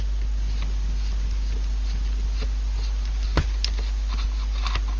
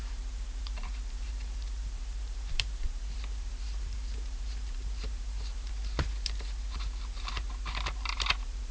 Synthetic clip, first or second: second